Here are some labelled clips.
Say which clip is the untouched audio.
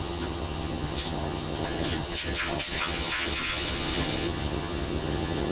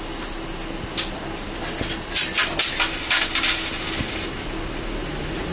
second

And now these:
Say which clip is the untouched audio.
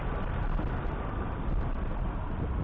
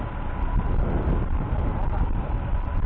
second